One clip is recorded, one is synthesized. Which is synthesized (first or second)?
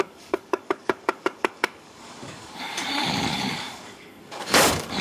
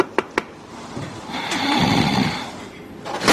first